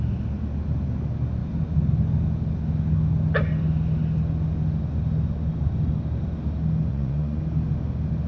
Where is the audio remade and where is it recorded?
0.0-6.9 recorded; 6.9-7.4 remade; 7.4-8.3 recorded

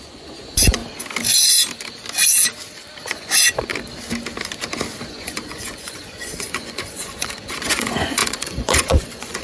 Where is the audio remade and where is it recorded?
0.0-0.8 remade; 0.8-3.1 recorded; 3.1-3.7 remade; 3.7-5.1 recorded; 5.1-9.4 remade